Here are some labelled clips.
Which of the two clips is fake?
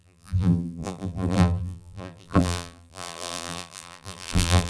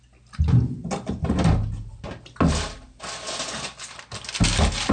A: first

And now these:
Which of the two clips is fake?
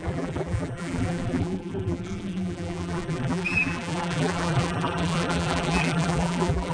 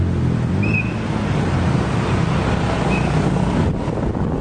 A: first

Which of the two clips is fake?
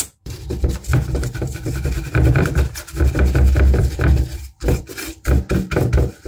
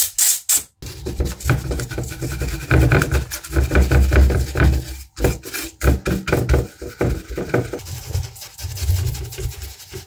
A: first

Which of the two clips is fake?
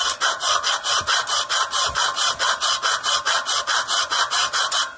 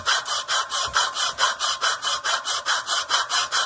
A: second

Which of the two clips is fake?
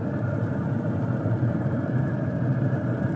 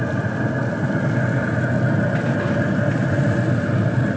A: first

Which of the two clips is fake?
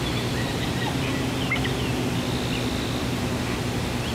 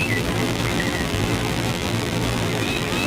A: second